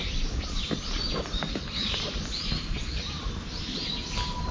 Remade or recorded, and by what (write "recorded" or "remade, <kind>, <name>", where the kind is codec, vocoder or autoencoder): recorded